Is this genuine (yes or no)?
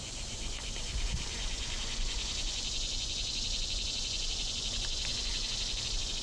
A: no